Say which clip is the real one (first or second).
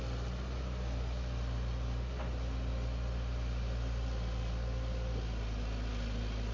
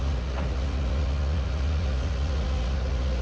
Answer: first